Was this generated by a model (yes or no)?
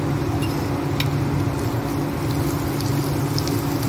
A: no